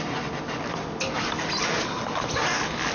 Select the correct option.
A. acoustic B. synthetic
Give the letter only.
A